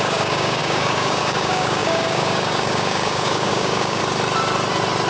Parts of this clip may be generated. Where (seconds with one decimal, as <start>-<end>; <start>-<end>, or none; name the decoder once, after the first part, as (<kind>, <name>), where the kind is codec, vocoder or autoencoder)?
0.0-4.0 (codec, DAC)